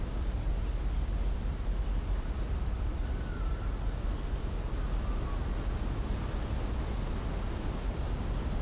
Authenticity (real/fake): real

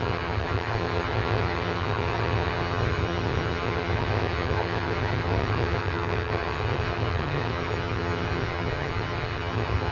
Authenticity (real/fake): fake